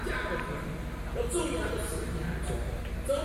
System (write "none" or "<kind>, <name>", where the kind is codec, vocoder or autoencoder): none